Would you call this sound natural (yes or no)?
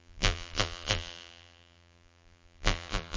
no